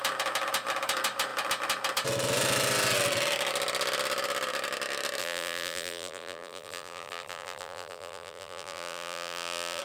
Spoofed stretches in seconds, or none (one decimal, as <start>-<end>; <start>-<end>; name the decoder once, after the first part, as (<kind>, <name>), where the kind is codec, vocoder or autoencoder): 5.2-9.8 (vocoder, BigVGAN v2)